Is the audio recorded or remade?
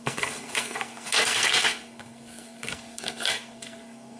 remade